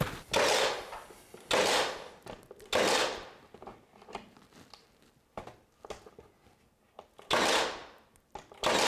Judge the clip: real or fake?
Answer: real